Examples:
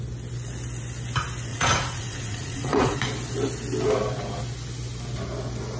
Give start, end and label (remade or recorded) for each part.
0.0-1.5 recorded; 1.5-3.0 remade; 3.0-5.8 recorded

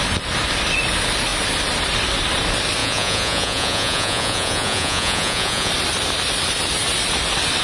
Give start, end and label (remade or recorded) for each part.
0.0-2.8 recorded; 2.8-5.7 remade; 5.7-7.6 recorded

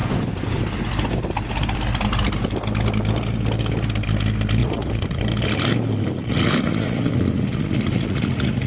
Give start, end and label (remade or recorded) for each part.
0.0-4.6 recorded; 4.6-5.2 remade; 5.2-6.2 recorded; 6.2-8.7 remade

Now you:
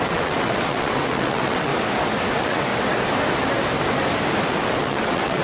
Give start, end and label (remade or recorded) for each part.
0.0-1.7 remade; 1.7-2.3 recorded; 2.3-2.7 remade; 2.7-4.5 recorded; 4.5-5.4 remade

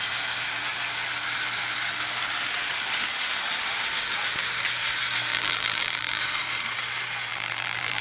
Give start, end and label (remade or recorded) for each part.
0.0-5.3 recorded; 5.3-6.2 remade; 6.2-7.3 recorded; 7.3-8.0 remade

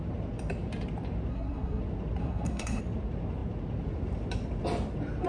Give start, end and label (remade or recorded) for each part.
0.0-1.3 recorded; 1.3-1.8 remade; 1.8-2.2 recorded; 2.2-2.8 remade; 2.8-5.3 recorded

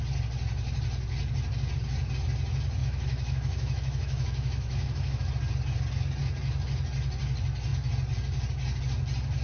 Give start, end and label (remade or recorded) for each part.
0.0-2.8 recorded; 2.8-5.3 remade; 5.3-9.4 recorded